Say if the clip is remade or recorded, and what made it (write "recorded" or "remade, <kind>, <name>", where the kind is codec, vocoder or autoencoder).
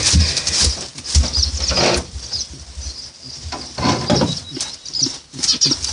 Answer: recorded